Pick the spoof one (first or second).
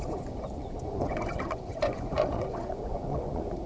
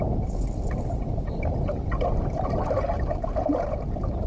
first